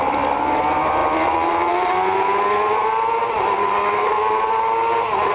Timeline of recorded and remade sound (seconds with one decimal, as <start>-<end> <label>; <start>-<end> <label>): 0.0-3.6 recorded; 3.6-4.4 remade; 4.4-5.3 recorded